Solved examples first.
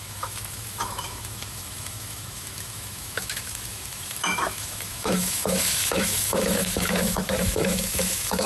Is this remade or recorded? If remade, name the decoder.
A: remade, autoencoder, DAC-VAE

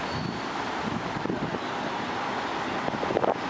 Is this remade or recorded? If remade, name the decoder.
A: recorded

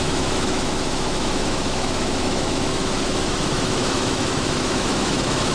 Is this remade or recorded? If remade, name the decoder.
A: remade, autoencoder, DAC-VAE